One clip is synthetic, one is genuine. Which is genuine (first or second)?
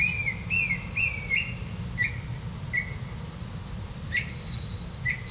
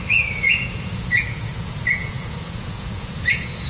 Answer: first